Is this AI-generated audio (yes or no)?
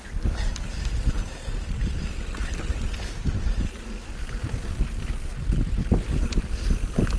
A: no